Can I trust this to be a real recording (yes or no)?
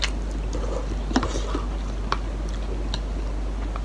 yes